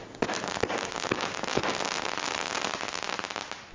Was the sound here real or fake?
real